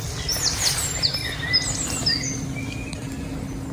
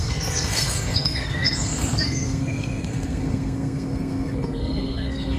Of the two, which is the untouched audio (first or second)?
first